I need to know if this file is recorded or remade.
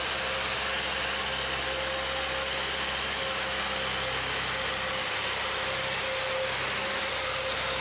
recorded